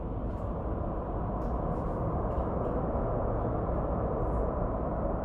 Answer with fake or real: real